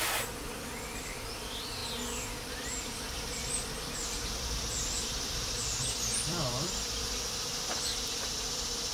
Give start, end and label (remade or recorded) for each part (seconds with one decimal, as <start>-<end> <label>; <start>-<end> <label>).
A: 0.0-1.8 remade; 1.8-2.4 recorded; 2.4-8.9 remade